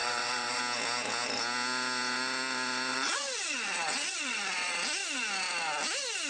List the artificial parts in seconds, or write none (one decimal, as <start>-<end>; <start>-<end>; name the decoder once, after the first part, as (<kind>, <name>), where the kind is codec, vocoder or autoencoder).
0.0-0.6 (vocoder, WaveNeXt); 2.9-4.8